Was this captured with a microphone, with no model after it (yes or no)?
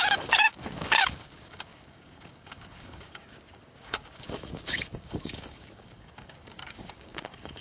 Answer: no